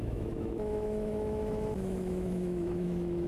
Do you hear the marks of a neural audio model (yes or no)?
yes